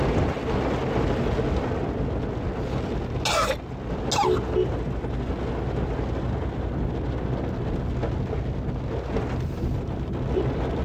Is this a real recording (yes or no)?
yes